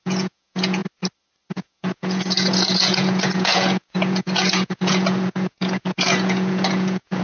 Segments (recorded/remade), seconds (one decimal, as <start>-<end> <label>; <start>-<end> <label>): 0.0-0.8 remade; 0.8-1.5 recorded; 1.5-7.2 remade